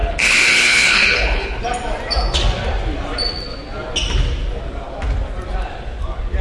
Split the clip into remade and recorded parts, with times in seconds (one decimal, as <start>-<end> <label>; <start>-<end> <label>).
0.0-1.6 remade; 1.6-6.4 recorded